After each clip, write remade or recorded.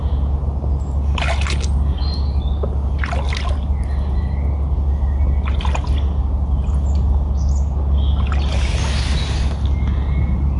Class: recorded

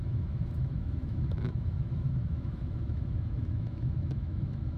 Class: remade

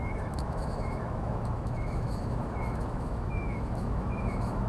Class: remade